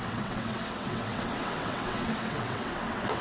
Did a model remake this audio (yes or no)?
yes